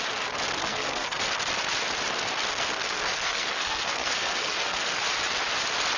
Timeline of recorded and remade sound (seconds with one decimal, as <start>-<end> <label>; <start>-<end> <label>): 0.0-0.6 recorded; 0.6-1.2 remade; 1.2-2.5 recorded; 2.5-5.0 remade; 5.0-6.0 recorded